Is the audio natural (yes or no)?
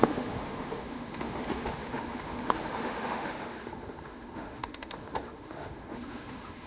no